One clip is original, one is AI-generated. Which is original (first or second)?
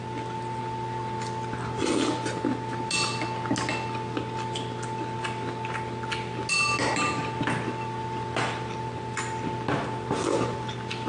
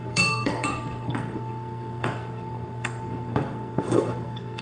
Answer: first